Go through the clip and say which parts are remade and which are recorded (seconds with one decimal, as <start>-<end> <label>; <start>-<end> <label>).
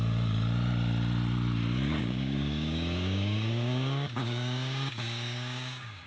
0.0-2.0 recorded; 2.0-6.1 remade